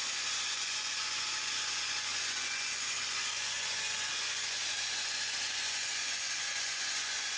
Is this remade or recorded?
remade